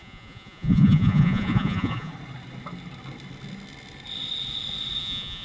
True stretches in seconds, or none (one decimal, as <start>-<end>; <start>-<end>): 2.1-5.0